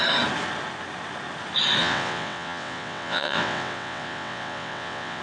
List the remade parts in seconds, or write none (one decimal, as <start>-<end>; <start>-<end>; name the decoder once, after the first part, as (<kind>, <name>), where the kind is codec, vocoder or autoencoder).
1.8-5.2 (vocoder, WaveNeXt)